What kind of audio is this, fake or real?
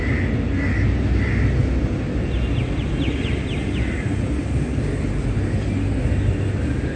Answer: real